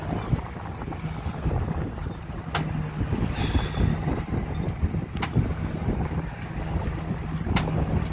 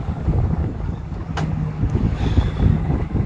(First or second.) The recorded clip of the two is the first